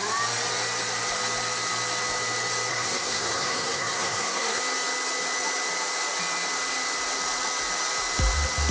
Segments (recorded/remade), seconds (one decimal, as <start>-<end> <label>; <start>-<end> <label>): 0.0-2.7 recorded; 2.7-4.6 remade; 4.6-8.7 recorded